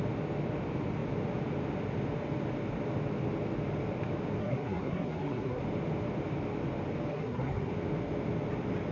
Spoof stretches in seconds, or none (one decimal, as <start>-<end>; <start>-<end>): 4.4-5.6; 7.1-7.7